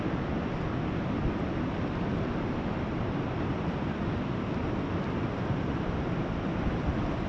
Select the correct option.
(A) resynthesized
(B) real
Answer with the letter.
B